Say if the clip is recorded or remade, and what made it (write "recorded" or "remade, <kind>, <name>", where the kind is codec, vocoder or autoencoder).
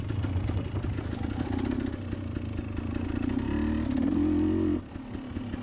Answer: recorded